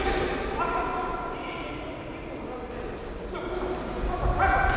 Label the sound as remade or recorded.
recorded